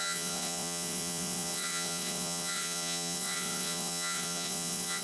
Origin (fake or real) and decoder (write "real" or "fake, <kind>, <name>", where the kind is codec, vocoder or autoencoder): fake, vocoder, Vocos